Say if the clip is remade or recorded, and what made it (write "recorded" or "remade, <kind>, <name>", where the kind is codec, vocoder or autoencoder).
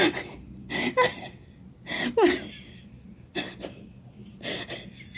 recorded